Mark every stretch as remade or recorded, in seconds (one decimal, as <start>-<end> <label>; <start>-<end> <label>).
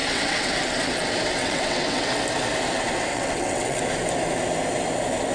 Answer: 0.0-0.5 remade; 0.5-1.4 recorded; 1.4-2.2 remade; 2.2-3.1 recorded; 3.1-3.8 remade; 3.8-5.3 recorded